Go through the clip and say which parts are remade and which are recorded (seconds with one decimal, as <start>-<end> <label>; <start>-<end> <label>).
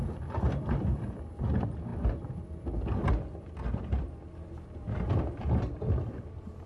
0.0-6.7 recorded